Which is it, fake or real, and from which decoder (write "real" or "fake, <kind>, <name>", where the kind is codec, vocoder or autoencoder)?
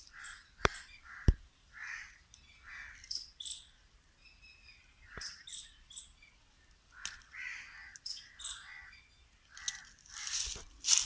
real